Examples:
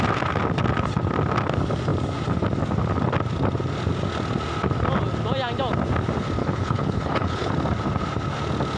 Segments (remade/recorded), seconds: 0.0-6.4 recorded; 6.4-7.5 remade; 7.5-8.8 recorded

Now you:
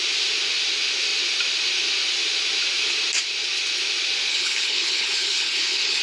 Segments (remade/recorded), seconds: 0.0-4.3 recorded; 4.3-6.0 remade

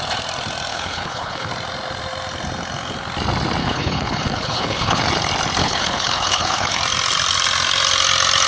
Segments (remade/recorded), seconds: 0.0-0.7 recorded; 0.7-1.5 remade; 1.5-3.6 recorded; 3.6-5.0 remade; 5.0-5.6 recorded; 5.6-6.8 remade; 6.8-8.5 recorded

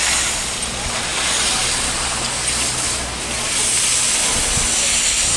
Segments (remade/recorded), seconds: 0.0-5.4 recorded

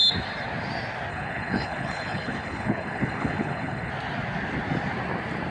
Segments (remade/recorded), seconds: 0.0-1.1 recorded; 1.1-3.9 remade; 3.9-5.5 recorded

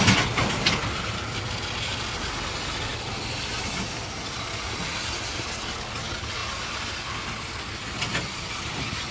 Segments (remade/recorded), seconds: 0.0-9.1 recorded

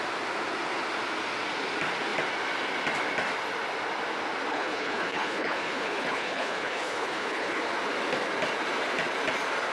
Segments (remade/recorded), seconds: 0.0-4.5 recorded; 4.5-7.6 remade; 7.6-9.7 recorded

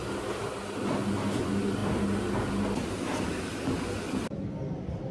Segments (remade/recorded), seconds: 0.0-5.1 recorded